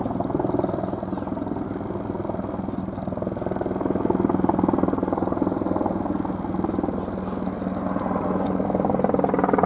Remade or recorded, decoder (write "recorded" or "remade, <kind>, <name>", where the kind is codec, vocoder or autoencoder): recorded